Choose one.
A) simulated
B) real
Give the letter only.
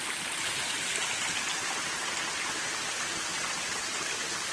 B